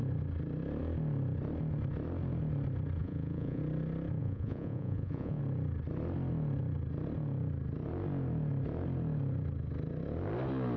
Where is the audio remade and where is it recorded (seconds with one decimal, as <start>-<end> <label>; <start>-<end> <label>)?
0.0-3.0 recorded; 3.0-3.6 remade; 3.6-4.2 recorded; 4.2-5.4 remade; 5.4-10.8 recorded